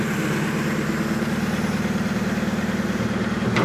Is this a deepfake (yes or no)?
yes